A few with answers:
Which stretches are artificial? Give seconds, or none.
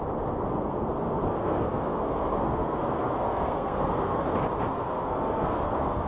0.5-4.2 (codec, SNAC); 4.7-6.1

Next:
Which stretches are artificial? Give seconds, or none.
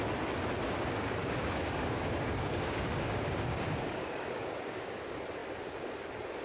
1.2-5.0 (codec, DAC)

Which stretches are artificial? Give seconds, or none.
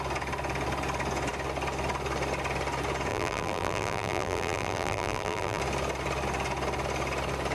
3.1-5.6 (vocoder, BigVGAN v2)